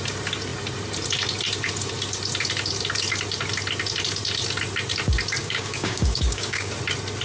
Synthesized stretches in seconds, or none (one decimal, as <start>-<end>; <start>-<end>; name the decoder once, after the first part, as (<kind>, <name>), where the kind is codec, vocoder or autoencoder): 5.4-6.7 (codec, DAC)